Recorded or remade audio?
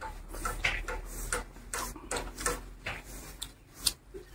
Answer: recorded